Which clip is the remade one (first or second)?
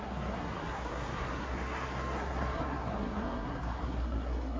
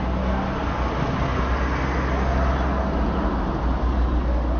first